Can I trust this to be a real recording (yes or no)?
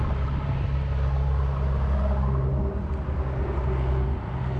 yes